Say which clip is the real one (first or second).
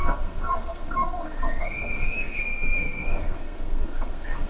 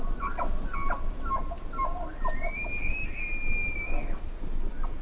second